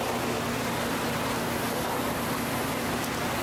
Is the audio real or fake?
real